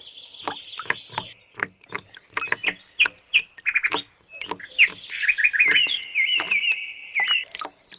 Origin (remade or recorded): recorded